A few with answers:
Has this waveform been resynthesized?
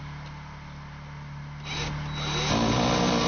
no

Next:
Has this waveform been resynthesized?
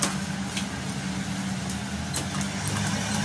no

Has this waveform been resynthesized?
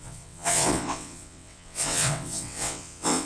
yes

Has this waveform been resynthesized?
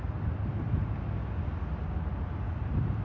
no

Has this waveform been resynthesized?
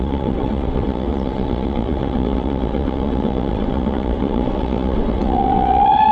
yes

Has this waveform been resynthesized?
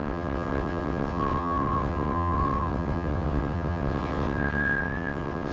yes